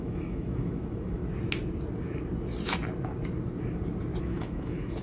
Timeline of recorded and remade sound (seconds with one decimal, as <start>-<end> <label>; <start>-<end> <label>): 0.0-1.2 remade; 1.2-4.2 recorded; 4.2-5.0 remade